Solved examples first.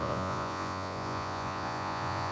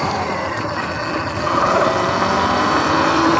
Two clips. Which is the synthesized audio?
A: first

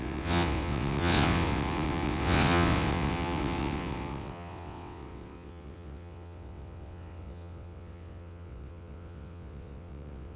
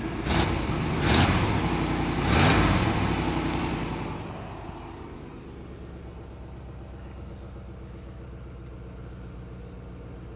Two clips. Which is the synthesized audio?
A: first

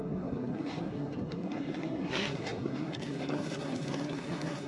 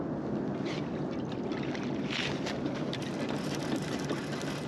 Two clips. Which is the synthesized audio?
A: first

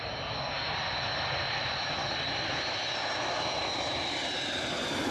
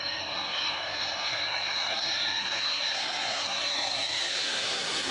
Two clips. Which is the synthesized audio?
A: second